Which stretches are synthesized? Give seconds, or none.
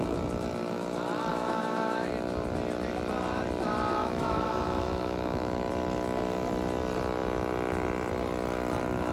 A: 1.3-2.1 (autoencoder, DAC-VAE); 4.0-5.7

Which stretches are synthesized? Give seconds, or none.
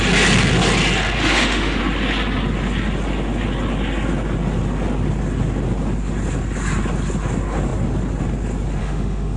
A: 1.2-1.8 (autoencoder, DAC-VAE); 8.8-9.4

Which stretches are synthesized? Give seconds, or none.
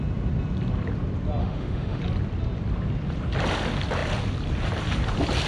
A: 1.4-2.0 (autoencoder, DAC-VAE)